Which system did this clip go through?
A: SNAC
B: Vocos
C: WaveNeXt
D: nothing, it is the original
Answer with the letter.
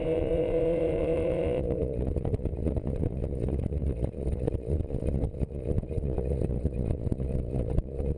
B